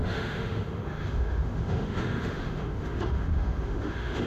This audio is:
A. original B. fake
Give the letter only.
B